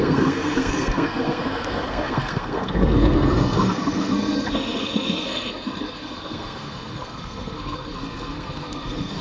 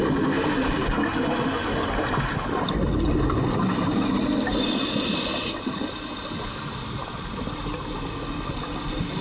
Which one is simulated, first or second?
first